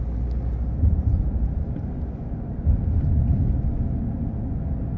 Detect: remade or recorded recorded